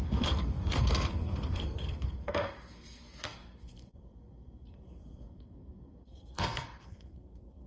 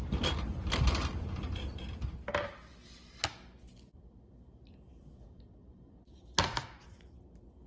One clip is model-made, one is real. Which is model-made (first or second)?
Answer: first